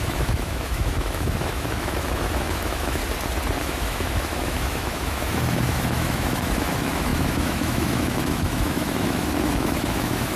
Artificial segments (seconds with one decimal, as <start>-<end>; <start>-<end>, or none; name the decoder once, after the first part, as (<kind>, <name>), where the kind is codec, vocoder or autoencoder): 0.0-3.0 (autoencoder, DAC-VAE); 3.6-10.4